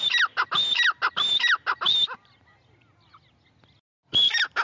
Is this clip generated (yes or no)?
no